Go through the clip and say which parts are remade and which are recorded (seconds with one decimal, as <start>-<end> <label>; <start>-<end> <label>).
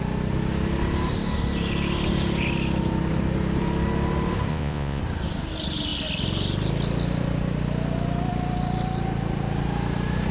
0.0-4.5 recorded; 4.5-5.0 remade; 5.0-10.3 recorded